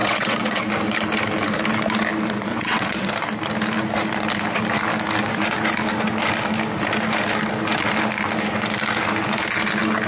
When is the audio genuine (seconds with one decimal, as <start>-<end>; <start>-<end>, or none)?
0.7-2.5; 3.1-10.1